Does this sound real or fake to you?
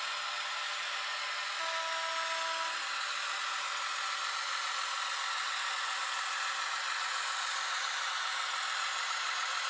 real